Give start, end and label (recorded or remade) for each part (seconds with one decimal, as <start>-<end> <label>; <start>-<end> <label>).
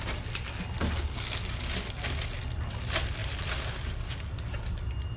0.0-5.2 recorded